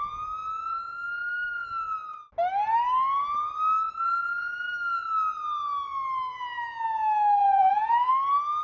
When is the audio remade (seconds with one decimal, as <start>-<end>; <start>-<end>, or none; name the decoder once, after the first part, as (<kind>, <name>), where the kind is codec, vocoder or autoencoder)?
7.4-8.1 (vocoder, Vocos)

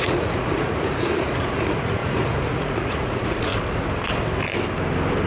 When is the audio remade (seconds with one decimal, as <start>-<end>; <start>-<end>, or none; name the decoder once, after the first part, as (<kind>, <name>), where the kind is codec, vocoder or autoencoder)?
0.0-3.5 (vocoder, Vocos)

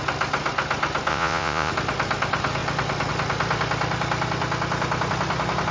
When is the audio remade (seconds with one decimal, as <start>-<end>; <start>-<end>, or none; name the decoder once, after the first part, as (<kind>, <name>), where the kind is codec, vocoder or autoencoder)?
1.1-1.7 (vocoder, Vocos)

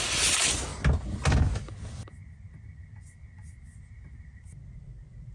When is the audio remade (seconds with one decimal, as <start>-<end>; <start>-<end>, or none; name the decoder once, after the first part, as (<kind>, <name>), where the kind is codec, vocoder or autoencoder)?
none